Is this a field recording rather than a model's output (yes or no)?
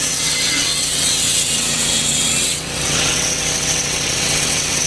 no